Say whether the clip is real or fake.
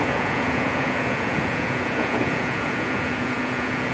fake